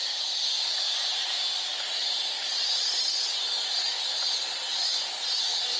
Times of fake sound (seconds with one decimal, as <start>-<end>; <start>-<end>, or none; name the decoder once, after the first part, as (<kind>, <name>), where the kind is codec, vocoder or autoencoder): 1.7-4.9 (vocoder, BigVGAN v2)